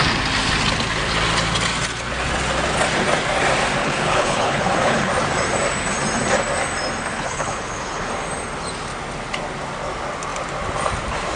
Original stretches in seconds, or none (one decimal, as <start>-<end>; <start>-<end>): 0.0-3.8; 5.1-7.1; 8.1-11.4